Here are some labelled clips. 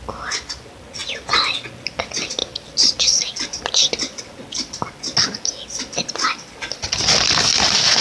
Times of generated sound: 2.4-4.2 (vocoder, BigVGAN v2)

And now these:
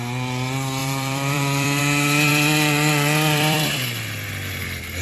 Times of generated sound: 0.8-1.8 (vocoder, BigVGAN v2); 2.3-5.0